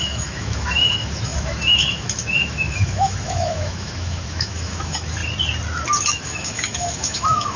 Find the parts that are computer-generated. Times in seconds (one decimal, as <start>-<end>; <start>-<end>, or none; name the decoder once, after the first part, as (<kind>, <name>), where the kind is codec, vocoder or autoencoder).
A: 0.0-5.2 (autoencoder, DAC-VAE); 6.1-7.6